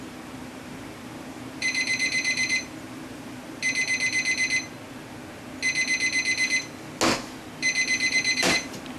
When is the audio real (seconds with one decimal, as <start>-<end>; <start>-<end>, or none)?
3.6-8.1